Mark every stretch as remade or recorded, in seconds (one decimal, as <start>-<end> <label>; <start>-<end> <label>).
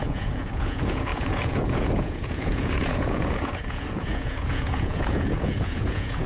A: 0.0-6.3 remade